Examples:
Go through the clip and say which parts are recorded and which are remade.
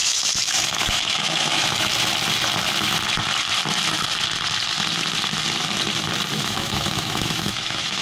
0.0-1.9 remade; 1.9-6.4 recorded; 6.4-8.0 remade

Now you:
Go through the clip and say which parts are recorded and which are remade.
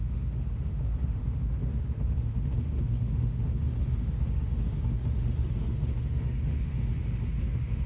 0.0-7.9 remade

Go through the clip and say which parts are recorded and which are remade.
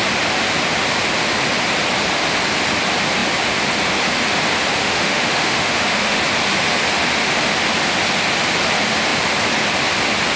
0.0-4.8 recorded; 4.8-6.2 remade; 6.2-10.4 recorded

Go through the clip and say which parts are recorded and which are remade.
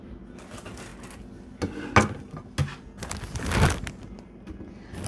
0.0-5.1 recorded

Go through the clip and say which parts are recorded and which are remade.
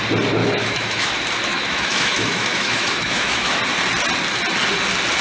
0.0-0.4 recorded; 0.4-1.1 remade; 1.1-1.5 recorded; 1.5-3.6 remade; 3.6-5.2 recorded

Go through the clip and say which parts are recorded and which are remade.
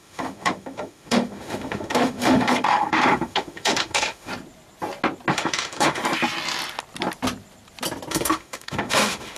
0.0-4.3 remade; 4.3-5.3 recorded; 5.3-6.0 remade; 6.0-8.1 recorded; 8.1-9.4 remade